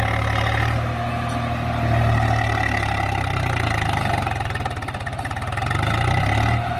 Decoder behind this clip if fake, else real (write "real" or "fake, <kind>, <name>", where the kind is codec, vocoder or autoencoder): real